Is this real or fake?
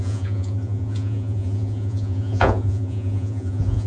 fake